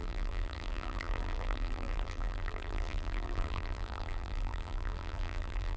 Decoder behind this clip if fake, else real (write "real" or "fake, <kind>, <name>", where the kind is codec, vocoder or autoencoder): fake, vocoder, BigVGAN v2